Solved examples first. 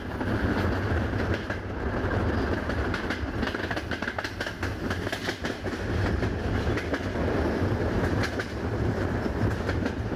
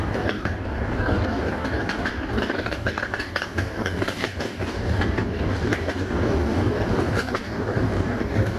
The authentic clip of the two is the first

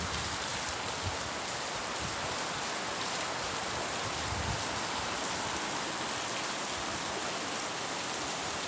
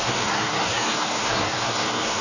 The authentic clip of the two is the first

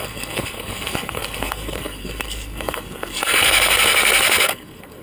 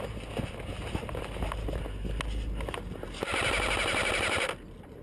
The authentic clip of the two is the second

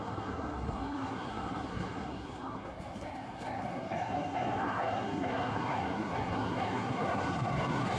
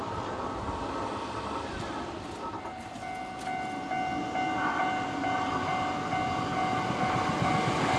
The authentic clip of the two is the second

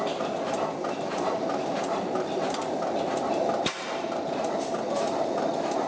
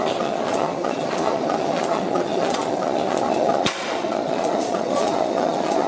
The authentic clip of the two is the first